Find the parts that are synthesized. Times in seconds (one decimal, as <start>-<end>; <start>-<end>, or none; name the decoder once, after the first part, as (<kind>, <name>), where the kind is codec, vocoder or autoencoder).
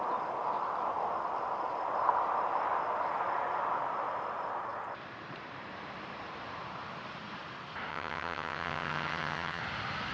7.9-9.6 (vocoder, HiFi-GAN)